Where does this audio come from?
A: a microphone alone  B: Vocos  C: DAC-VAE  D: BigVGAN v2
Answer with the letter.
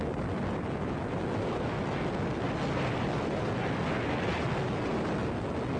A